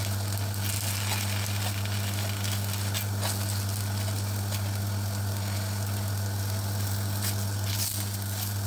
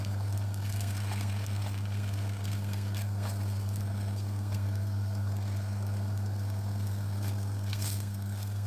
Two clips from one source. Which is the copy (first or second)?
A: second